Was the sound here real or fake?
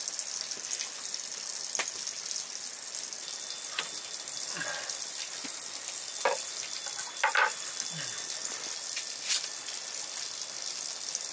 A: real